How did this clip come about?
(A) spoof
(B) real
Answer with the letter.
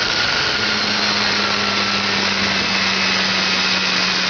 B